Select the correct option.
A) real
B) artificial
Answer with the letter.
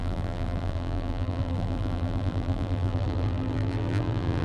B